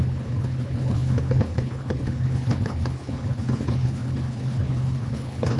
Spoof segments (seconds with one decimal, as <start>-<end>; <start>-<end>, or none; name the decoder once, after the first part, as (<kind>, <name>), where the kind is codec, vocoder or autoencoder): 0.0-5.6 (codec, HILCodec)